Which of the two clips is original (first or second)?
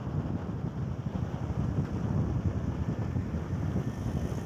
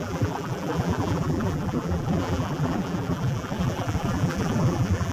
first